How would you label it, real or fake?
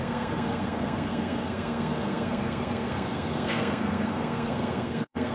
fake